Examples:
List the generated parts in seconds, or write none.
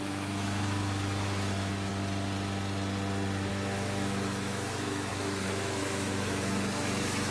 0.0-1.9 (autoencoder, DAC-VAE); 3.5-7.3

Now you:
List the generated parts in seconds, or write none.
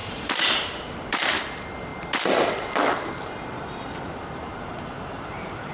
0.0-1.9 (vocoder, BigVGAN v2); 5.3-5.7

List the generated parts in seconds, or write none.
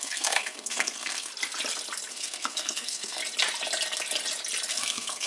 0.0-1.3 (codec, SNAC); 2.1-3.2; 4.7-5.3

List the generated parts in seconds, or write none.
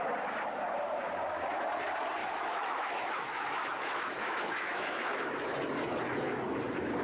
2.2-5.3 (autoencoder, DAC-VAE)